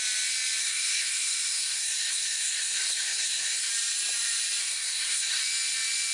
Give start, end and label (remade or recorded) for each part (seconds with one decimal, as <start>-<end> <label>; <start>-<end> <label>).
0.0-0.6 recorded; 0.6-3.7 remade; 3.7-4.6 recorded; 4.6-5.4 remade; 5.4-6.1 recorded